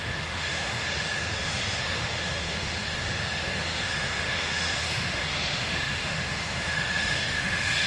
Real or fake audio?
fake